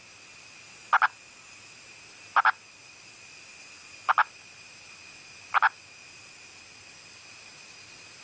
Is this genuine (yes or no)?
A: yes